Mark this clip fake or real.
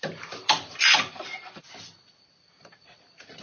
real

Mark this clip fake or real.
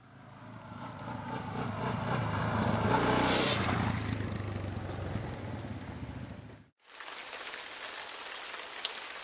real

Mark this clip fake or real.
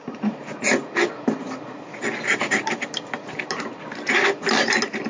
real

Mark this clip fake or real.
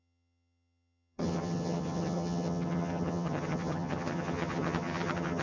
fake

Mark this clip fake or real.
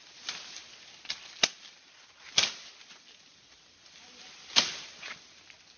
real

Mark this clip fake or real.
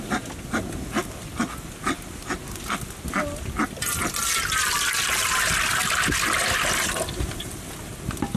real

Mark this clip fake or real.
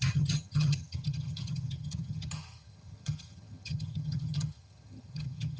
fake